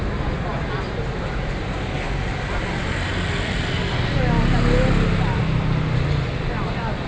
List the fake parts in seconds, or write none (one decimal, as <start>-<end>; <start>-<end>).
none